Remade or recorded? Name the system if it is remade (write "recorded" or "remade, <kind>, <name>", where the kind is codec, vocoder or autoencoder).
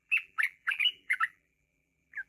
remade, vocoder, BigVGAN v2